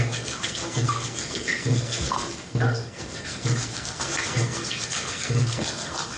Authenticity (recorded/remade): remade